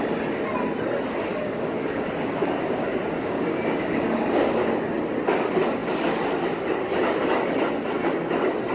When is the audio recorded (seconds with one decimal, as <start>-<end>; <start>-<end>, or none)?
0.0-1.3; 4.9-8.7